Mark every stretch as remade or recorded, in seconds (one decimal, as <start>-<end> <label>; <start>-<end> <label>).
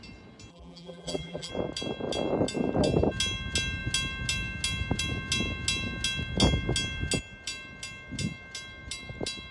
0.0-0.5 recorded; 0.5-1.5 remade; 1.5-9.5 recorded